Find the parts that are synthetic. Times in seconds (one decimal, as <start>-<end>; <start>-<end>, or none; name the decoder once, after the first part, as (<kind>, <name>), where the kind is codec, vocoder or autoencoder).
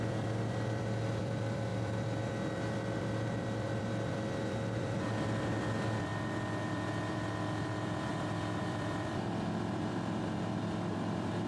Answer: 0.0-11.5 (vocoder, BigVGAN v2)